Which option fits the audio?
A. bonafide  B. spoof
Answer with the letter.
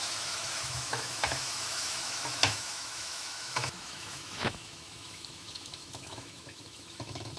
B